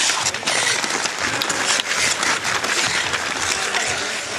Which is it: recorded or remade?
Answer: recorded